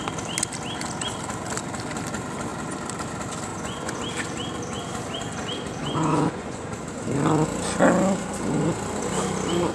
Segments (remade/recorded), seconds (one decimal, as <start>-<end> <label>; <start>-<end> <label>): 0.0-3.5 recorded; 3.5-4.0 remade; 4.0-5.8 recorded; 5.8-6.7 remade; 6.7-9.7 recorded